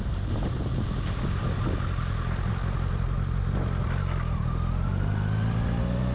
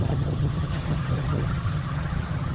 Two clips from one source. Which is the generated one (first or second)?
second